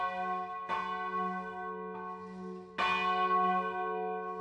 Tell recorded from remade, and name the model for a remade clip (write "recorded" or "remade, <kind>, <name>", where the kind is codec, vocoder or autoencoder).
recorded